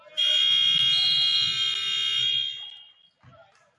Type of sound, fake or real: real